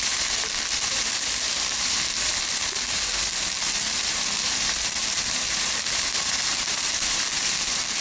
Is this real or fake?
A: fake